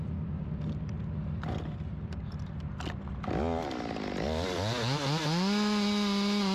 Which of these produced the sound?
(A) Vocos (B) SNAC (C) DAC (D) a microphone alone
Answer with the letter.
D